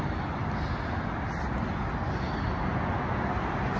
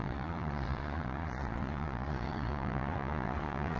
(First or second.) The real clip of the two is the first